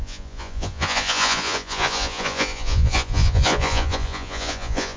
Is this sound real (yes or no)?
no